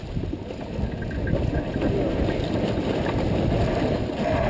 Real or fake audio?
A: real